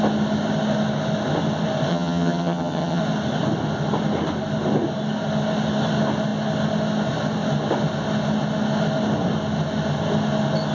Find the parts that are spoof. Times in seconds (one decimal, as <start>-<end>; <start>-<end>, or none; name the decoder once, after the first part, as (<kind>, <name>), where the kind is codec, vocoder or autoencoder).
1.9-3.0 (vocoder, HiFi-GAN)